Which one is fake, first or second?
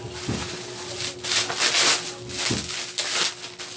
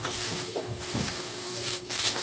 second